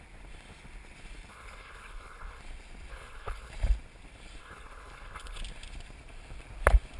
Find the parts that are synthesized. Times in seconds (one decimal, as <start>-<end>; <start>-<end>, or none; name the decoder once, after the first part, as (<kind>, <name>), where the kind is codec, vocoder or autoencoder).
1.3-2.4 (codec, HILCodec); 2.9-3.5; 4.4-5.4